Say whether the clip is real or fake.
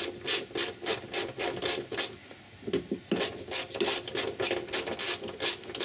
real